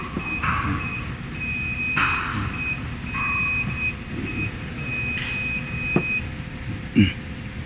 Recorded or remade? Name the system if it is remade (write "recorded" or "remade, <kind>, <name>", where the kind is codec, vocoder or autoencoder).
recorded